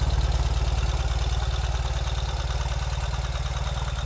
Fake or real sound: real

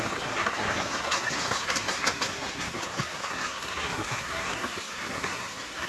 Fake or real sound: fake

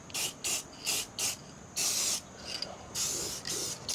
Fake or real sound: real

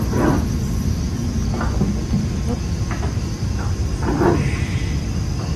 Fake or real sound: real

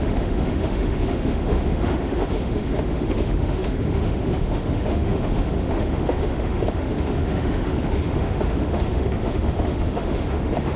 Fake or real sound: fake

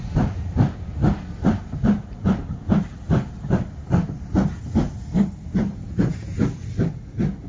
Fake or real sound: real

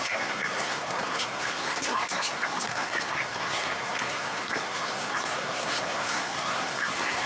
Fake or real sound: fake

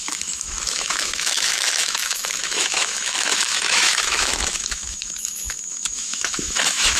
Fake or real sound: fake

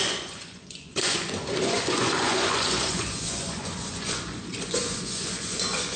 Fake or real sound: fake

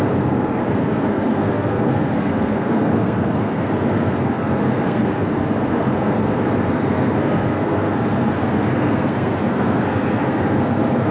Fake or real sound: fake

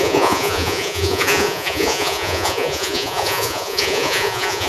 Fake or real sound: fake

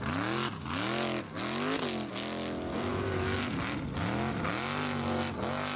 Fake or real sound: real